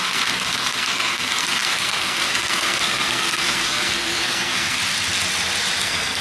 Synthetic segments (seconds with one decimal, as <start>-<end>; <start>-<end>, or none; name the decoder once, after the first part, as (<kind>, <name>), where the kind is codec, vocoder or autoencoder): 0.0-4.8 (codec, SNAC); 5.8-6.2